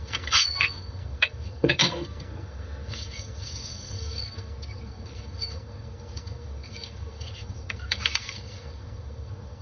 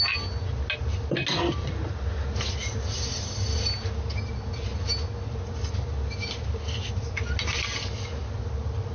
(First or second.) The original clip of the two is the second